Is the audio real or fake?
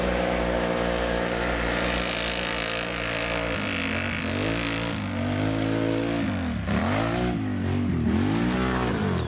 real